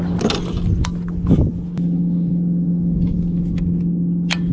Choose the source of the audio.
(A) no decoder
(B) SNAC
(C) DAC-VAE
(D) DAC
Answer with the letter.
A